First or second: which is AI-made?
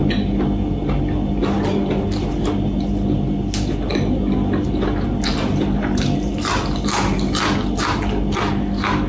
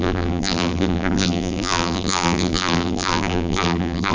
second